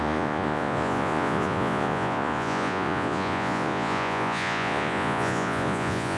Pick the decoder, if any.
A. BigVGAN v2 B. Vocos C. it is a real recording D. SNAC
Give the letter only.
B